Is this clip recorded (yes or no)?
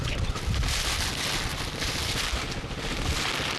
yes